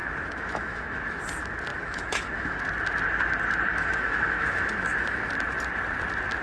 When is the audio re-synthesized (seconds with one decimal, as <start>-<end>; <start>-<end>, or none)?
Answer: 0.0-1.2; 1.7-2.6; 3.7-5.3